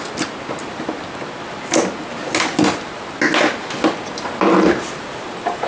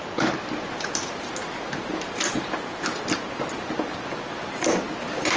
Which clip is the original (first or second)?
first